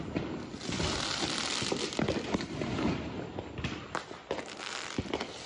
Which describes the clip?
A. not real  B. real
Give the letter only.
A